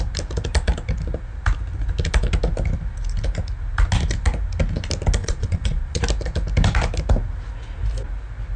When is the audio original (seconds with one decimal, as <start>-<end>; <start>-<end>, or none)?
0.0-5.2; 6.0-8.6